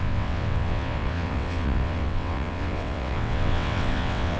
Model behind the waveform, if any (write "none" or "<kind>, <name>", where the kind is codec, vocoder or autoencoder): vocoder, WaveNeXt